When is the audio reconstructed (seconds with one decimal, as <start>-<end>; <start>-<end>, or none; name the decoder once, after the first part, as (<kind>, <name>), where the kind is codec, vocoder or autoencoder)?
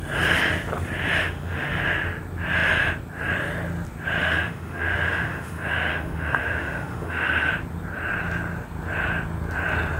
1.2-1.8 (autoencoder, DAC-VAE); 4.2-7.5